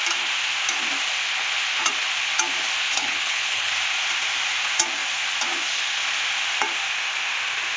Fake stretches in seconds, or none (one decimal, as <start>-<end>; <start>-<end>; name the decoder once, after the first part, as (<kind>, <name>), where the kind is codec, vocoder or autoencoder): 3.0-3.7 (codec, HILCodec)